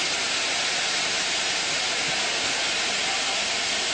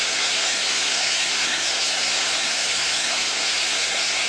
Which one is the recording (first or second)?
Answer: first